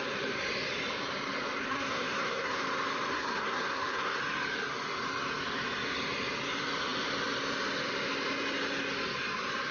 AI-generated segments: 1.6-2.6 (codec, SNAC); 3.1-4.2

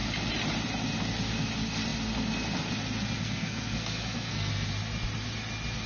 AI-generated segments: 3.2-4.5 (codec, SNAC)

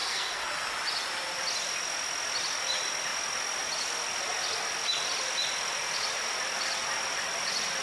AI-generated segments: 0.0-0.7 (codec, SNAC)

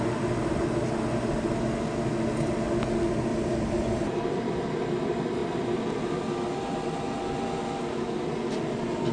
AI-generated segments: 3.3-4.2 (vocoder, BigVGAN v2)

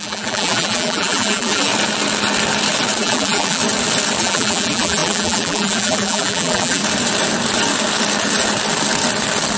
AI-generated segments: 0.0-1.7 (vocoder, BigVGAN v2); 3.0-3.6; 4.2-6.8

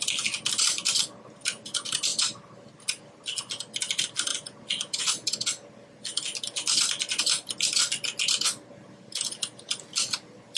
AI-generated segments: none